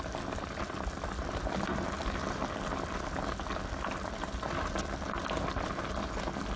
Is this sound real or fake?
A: real